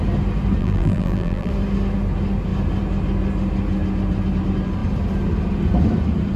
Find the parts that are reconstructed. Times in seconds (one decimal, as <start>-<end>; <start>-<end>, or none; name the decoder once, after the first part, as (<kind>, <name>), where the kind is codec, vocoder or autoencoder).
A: 0.6-1.5 (vocoder, BigVGAN v2)

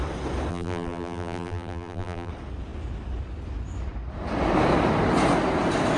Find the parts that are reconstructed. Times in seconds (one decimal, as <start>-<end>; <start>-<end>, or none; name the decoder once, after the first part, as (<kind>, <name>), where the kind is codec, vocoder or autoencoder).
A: 0.5-2.3 (vocoder, BigVGAN v2)

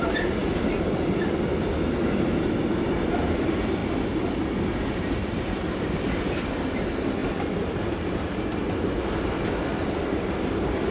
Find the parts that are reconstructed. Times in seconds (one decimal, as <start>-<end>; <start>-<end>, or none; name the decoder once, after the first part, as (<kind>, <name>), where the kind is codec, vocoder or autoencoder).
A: 0.0-0.4 (vocoder, BigVGAN v2); 2.9-7.2; 9.5-10.9